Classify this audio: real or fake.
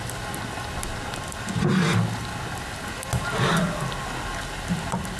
real